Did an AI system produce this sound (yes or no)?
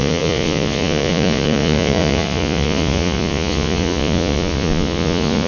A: yes